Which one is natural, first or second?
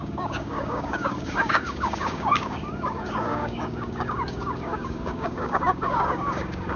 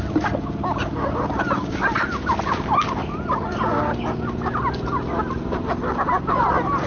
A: second